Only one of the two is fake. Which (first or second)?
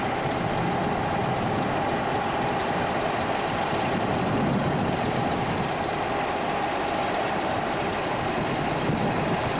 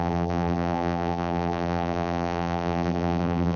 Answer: second